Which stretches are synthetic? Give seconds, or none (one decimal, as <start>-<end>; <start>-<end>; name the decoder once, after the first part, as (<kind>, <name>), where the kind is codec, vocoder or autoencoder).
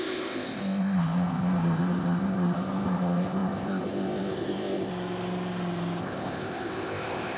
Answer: 0.0-4.9 (codec, ZipCodec); 6.0-7.4